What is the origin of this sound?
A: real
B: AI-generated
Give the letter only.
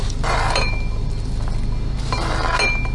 A